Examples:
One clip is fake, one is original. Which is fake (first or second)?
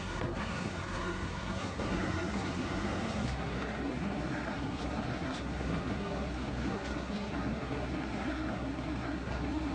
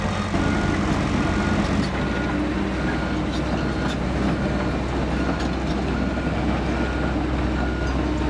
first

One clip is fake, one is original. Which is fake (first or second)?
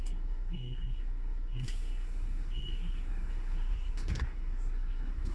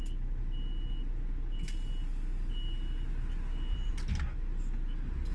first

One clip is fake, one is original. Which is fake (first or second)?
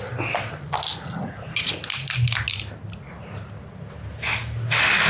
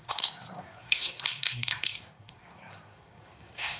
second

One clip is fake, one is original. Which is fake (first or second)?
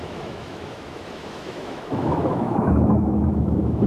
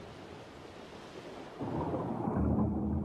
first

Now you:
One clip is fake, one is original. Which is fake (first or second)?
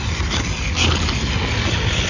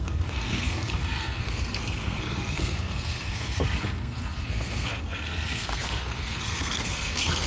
second